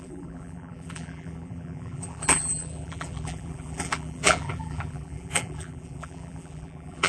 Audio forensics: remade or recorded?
remade